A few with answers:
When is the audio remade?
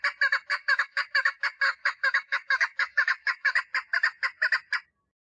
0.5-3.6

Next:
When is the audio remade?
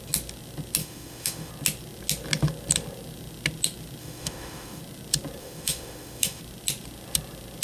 0.8-1.5; 4.0-4.8; 5.4-6.4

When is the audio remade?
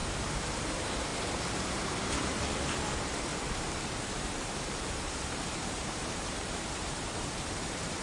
0.0-1.1; 1.7-3.3; 4.0-8.0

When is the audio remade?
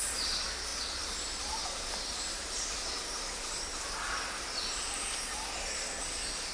none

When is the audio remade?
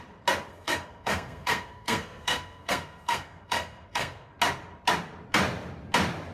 0.5-4.3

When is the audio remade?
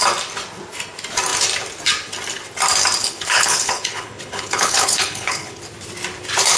3.0-5.6